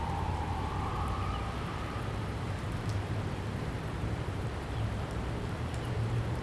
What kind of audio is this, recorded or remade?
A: remade